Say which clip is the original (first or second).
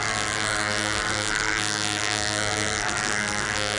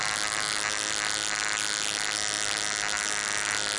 second